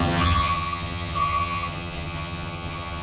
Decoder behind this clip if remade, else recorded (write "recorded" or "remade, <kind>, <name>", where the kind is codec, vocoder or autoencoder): remade, vocoder, HiFi-GAN